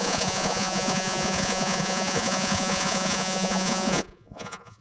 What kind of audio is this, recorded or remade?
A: remade